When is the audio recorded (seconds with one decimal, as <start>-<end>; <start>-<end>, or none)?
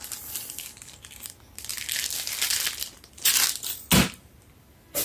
0.0-5.0